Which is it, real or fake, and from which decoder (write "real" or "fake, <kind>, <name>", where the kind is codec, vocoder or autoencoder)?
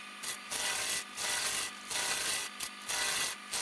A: real